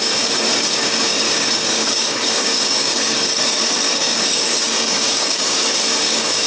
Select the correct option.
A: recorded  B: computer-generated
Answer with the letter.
B